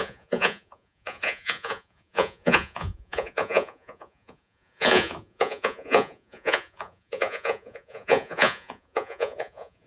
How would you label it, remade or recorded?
remade